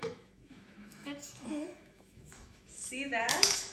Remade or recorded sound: remade